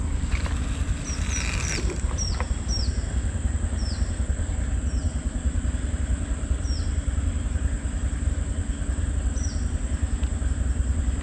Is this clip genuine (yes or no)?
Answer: yes